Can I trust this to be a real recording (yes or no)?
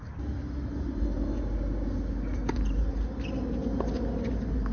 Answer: yes